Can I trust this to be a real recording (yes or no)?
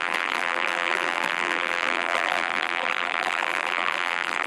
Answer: no